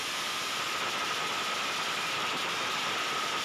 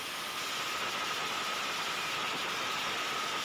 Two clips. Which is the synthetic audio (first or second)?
first